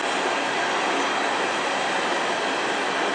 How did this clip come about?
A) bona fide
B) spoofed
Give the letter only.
A